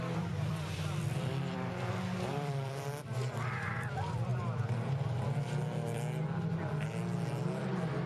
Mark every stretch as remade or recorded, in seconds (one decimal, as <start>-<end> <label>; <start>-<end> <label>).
0.0-4.3 remade; 4.3-8.1 recorded